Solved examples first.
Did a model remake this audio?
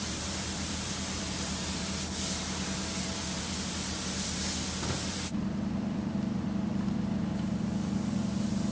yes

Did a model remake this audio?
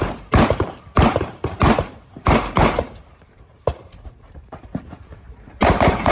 yes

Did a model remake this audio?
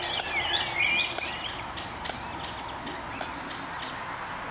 no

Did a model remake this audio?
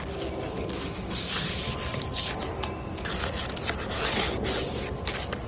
no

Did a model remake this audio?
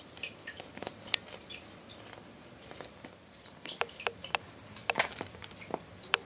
yes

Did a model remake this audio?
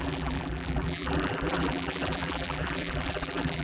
yes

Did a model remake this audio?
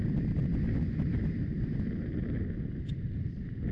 no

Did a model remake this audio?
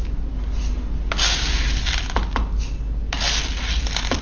no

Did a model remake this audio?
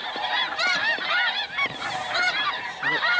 yes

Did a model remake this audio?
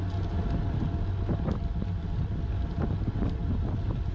no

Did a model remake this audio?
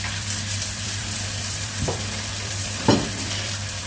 yes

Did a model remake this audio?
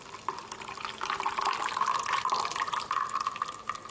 no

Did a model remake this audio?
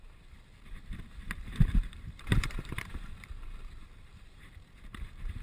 yes